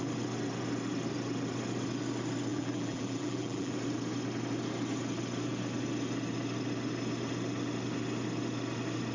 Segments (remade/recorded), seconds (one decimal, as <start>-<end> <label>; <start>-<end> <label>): 0.0-2.5 recorded; 2.5-3.7 remade; 3.7-9.1 recorded